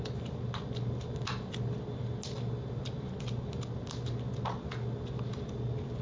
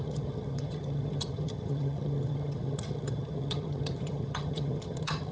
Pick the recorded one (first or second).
first